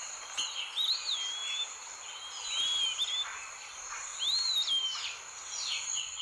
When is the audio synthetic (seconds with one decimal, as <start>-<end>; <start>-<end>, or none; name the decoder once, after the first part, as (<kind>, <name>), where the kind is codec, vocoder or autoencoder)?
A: none